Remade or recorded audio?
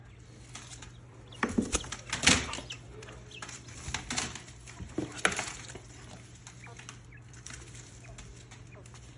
recorded